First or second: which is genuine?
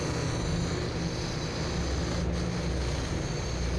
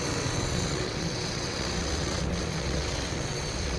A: first